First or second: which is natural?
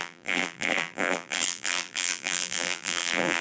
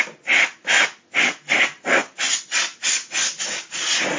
second